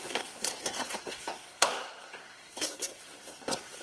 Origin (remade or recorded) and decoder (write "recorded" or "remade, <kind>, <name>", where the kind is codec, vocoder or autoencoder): remade, codec, SNAC